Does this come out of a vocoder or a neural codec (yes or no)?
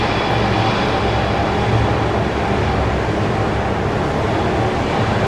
no